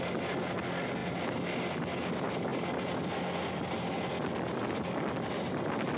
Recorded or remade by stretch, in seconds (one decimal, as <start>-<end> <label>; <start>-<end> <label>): 0.0-6.0 recorded